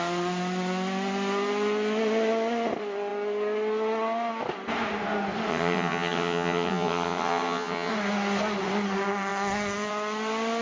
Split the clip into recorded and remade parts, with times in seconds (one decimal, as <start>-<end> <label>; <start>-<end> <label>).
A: 0.0-5.5 recorded; 5.5-7.9 remade; 7.9-10.6 recorded